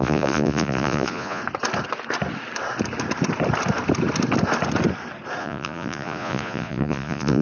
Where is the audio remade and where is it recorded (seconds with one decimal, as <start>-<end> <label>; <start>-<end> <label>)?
0.0-1.4 remade; 1.4-5.4 recorded; 5.4-7.4 remade